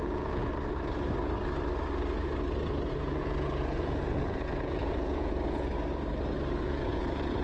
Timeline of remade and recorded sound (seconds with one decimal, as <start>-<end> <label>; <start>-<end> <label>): 0.0-0.4 remade; 0.4-2.9 recorded; 2.9-5.7 remade; 5.7-6.6 recorded; 6.6-7.4 remade